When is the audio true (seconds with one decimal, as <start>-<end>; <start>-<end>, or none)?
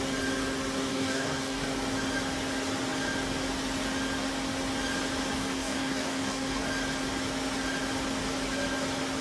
0.0-0.9; 1.6-5.3; 6.6-9.2